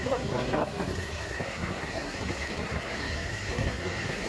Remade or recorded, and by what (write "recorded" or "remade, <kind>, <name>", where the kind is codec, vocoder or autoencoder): remade, codec, SNAC